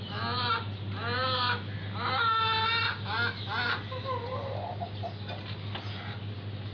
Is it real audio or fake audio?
real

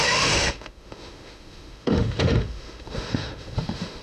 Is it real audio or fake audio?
fake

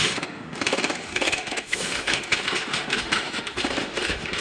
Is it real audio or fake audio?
fake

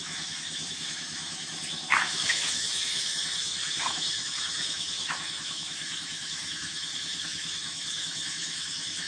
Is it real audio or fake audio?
fake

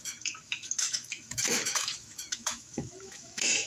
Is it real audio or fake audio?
fake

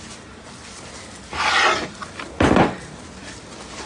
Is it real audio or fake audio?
real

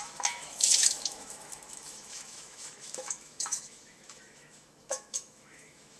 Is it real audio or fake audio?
fake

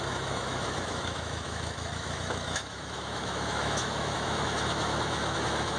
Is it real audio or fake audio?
fake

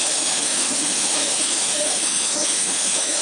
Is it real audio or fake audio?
fake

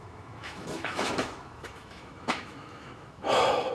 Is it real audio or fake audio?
fake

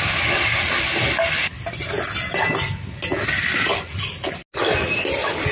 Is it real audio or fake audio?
real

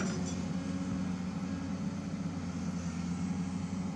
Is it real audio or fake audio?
real